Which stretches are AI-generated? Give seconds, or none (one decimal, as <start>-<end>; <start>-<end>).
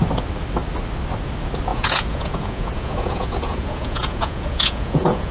1.7-5.3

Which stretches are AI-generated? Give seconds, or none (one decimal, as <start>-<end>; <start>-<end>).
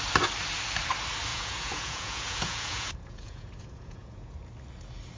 1.3-4.4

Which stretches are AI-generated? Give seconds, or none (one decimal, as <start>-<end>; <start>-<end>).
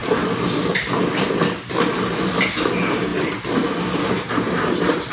none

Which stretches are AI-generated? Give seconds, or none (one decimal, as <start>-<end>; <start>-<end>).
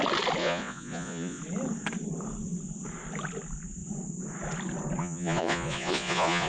0.4-1.4; 5.0-6.5